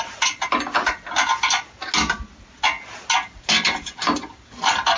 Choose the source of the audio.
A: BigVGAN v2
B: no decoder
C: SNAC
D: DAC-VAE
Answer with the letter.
B